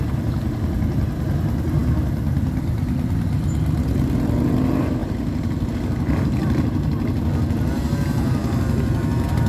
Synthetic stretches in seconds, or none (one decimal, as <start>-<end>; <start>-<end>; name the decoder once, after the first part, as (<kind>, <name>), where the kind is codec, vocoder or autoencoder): none